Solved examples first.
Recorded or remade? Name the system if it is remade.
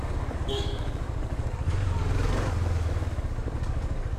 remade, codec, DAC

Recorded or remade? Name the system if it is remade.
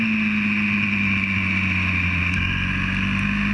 recorded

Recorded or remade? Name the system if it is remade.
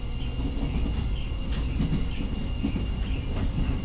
recorded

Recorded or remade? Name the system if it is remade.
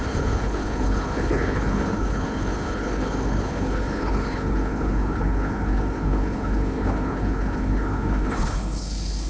remade, codec, HILCodec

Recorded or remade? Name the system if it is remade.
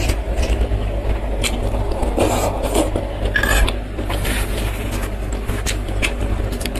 recorded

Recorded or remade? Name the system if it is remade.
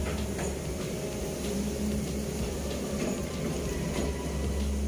recorded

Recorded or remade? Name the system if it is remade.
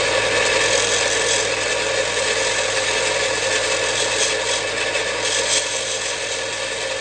recorded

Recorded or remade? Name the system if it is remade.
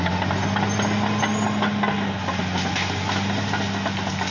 recorded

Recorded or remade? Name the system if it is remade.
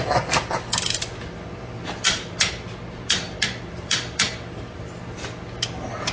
recorded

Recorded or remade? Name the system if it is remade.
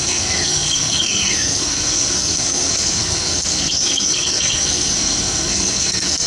remade, codec, SNAC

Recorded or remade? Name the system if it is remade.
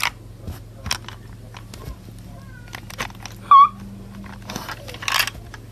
recorded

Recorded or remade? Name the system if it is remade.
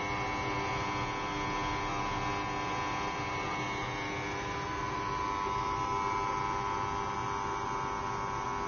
recorded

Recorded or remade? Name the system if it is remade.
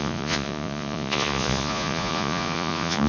remade, vocoder, Vocos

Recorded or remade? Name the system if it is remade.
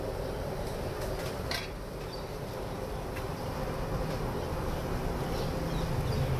recorded